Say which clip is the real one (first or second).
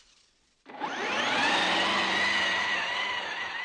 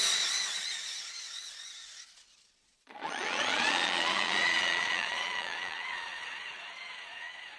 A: first